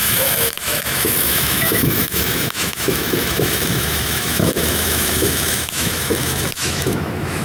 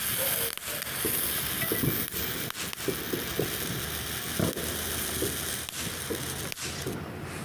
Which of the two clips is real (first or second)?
second